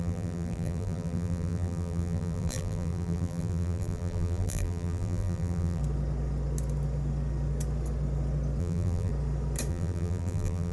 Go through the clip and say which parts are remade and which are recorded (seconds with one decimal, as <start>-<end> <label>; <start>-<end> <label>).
0.0-5.8 remade; 5.8-8.6 recorded; 8.6-9.1 remade; 9.1-9.7 recorded; 9.7-10.7 remade